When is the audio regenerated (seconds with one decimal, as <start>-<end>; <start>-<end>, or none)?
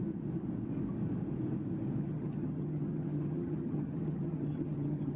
2.0-5.2